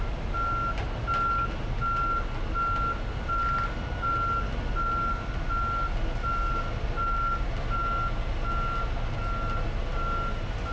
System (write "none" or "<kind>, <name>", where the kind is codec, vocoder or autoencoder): none